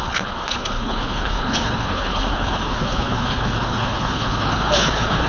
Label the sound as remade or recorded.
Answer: remade